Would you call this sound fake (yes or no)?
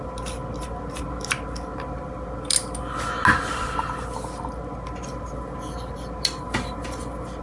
no